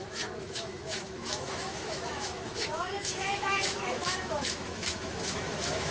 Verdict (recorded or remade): remade